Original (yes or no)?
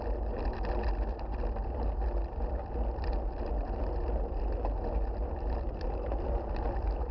yes